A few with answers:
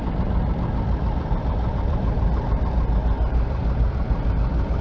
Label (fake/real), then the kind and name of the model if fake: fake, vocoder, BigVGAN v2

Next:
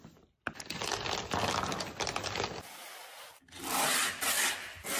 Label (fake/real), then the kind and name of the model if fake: real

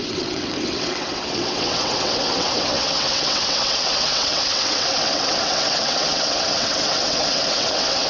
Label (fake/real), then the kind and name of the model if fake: fake, vocoder, WaveNeXt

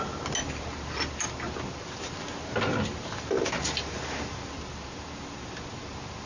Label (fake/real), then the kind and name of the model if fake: real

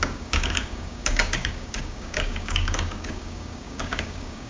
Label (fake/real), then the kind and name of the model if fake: fake, codec, DAC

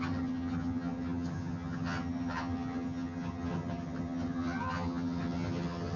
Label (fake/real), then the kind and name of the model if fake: fake, vocoder, HiFi-GAN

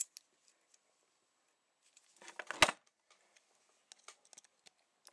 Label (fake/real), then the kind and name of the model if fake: real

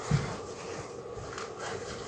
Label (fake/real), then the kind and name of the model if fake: real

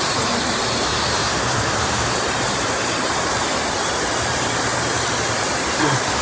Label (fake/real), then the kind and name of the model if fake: fake, vocoder, BigVGAN v2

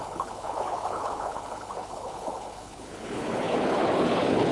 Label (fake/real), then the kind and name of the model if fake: fake, codec, HILCodec